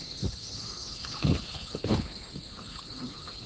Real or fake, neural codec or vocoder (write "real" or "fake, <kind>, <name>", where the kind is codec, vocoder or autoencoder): fake, codec, HILCodec